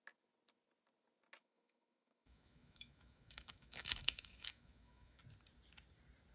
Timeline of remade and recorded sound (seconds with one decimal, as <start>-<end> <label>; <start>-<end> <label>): 0.0-1.4 recorded; 1.4-5.2 remade; 5.2-6.3 recorded

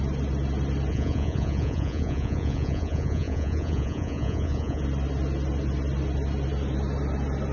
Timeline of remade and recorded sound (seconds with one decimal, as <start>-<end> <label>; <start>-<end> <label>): 0.0-0.9 recorded; 0.9-4.8 remade; 4.8-7.5 recorded

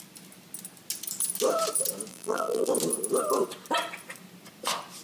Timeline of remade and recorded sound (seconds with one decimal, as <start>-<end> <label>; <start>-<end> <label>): 0.0-2.1 recorded; 2.1-2.7 remade; 2.7-5.0 recorded

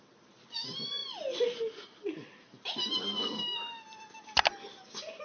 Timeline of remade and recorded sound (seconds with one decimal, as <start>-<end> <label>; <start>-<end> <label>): 0.0-5.2 recorded

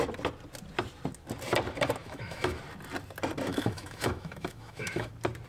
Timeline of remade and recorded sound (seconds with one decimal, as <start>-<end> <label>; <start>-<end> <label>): 0.0-2.0 recorded; 2.0-2.6 remade; 2.6-3.5 recorded; 3.5-5.1 remade; 5.1-5.5 recorded